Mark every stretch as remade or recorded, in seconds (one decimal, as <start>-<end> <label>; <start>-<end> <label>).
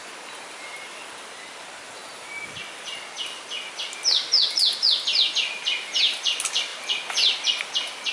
0.0-8.1 recorded